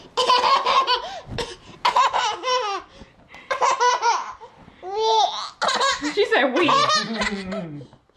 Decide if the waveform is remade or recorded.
recorded